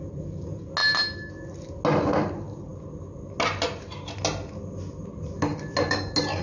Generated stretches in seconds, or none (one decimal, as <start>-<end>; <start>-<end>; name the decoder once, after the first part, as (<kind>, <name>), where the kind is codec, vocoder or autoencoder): none